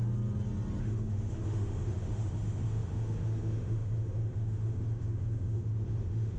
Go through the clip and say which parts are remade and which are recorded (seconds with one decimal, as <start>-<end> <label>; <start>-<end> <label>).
0.0-0.8 recorded; 0.8-6.4 remade